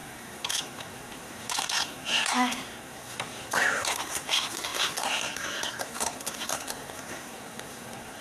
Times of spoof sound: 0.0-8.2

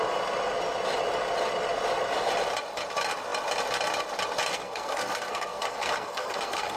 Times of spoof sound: 4.5-6.8

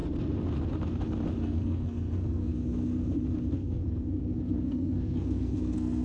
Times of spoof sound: 1.4-2.5; 3.5-6.0

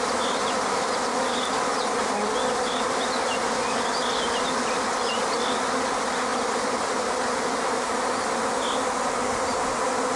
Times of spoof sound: none

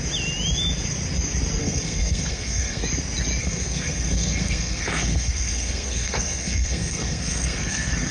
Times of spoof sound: 1.6-2.8; 3.4-8.1